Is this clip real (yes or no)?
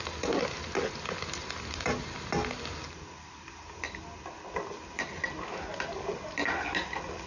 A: yes